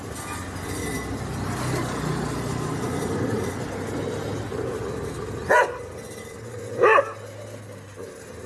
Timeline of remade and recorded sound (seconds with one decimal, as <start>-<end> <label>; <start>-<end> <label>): 0.0-8.5 recorded